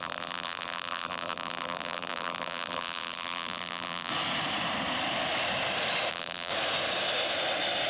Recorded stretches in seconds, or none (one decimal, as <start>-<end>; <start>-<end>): 4.1-6.1; 6.5-7.9